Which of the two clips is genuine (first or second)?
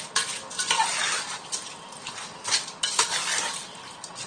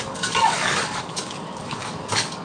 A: first